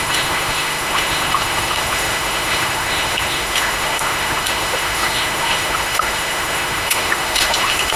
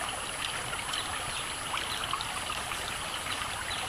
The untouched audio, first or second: second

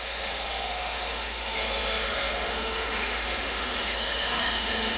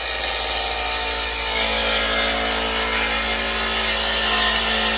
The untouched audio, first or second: second